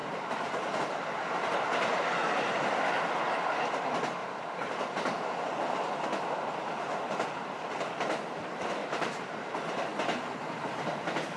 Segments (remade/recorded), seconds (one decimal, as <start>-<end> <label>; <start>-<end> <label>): 0.0-0.8 remade; 0.8-4.2 recorded; 4.2-4.9 remade; 4.9-8.8 recorded; 8.8-9.5 remade; 9.5-11.4 recorded